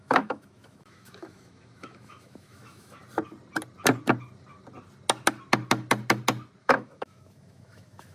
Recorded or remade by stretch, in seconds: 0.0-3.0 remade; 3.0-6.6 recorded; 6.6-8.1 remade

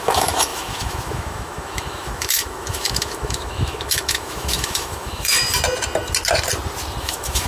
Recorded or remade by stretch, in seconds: 0.0-5.4 remade; 5.4-7.0 recorded; 7.0-7.5 remade

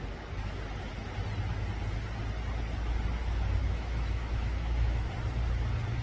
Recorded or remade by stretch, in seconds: 0.0-3.6 recorded; 3.6-5.1 remade; 5.1-6.0 recorded

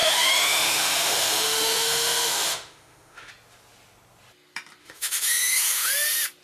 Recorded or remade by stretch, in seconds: 0.0-3.3 remade; 3.3-4.8 recorded; 4.8-5.9 remade; 5.9-6.4 recorded